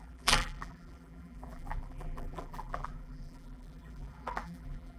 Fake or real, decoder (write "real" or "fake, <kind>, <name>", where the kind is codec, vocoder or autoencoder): fake, vocoder, BigVGAN v2